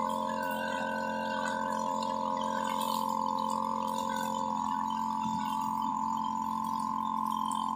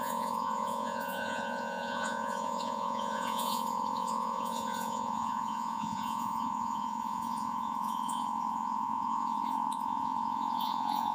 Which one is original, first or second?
first